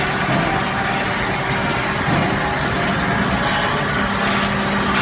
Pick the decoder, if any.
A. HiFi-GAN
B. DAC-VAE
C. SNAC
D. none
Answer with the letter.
D